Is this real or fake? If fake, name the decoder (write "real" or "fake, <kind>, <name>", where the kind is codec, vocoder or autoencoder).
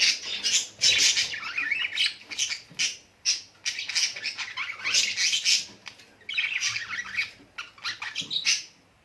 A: real